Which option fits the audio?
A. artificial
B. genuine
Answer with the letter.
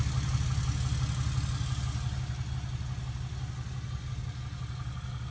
B